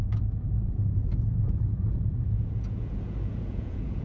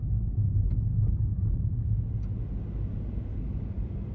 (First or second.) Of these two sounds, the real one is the second